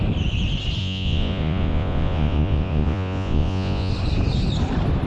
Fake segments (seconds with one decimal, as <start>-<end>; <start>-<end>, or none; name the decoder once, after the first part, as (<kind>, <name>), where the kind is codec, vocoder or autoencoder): 0.8-3.9 (vocoder, Vocos)